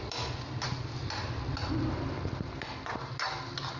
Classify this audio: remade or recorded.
recorded